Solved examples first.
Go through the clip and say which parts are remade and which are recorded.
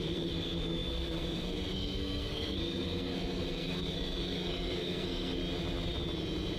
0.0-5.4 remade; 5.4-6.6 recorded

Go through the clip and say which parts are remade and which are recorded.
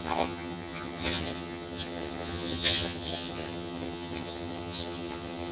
0.0-5.5 remade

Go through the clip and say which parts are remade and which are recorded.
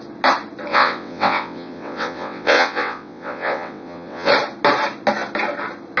0.0-0.7 recorded; 0.7-4.3 remade; 4.3-6.0 recorded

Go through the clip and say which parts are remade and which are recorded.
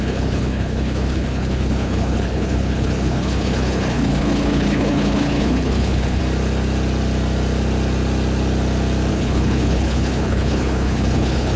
0.0-6.2 remade; 6.2-9.1 recorded; 9.1-11.6 remade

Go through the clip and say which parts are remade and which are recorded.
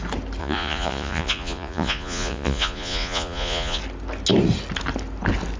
0.0-0.4 recorded; 0.4-3.8 remade; 3.8-5.6 recorded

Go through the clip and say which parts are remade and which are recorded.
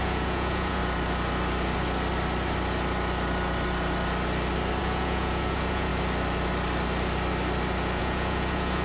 0.0-0.8 remade; 0.8-4.8 recorded; 4.8-5.9 remade; 5.9-8.0 recorded; 8.0-8.8 remade